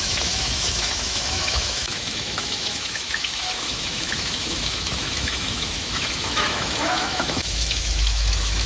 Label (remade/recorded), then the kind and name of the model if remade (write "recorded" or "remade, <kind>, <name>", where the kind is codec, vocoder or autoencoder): remade, autoencoder, DAC-VAE